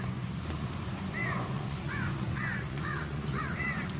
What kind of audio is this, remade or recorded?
remade